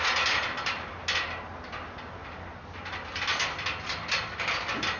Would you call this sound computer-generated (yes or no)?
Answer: no